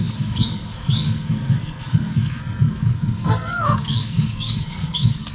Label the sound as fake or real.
fake